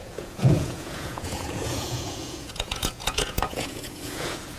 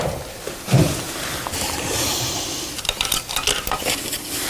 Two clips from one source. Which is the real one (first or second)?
second